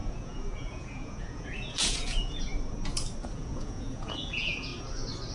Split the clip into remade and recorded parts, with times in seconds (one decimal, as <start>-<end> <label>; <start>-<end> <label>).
0.0-2.5 remade; 2.5-3.3 recorded; 3.3-4.7 remade; 4.7-5.3 recorded